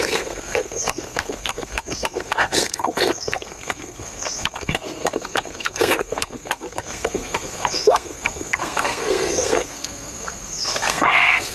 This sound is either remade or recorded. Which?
remade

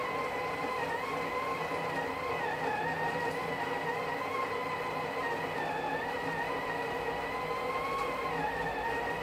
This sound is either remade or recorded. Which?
recorded